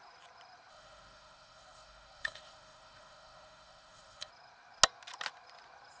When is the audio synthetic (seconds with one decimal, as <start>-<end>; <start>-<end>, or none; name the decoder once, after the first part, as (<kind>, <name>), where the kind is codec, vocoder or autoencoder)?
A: 0.7-4.3 (autoencoder, DAC-VAE)